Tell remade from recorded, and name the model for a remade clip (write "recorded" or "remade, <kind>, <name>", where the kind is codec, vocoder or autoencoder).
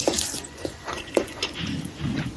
remade, vocoder, Vocos